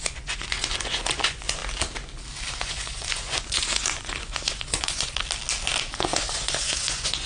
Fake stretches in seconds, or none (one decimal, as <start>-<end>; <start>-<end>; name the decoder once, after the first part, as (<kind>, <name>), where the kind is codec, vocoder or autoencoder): 0.0-1.6 (vocoder, Vocos); 2.5-5.2; 5.8-7.3